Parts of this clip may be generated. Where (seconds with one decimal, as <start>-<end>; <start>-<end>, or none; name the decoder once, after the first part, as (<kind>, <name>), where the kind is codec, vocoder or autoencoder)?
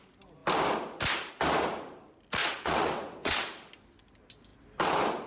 2.4-3.4 (vocoder, WaveNeXt)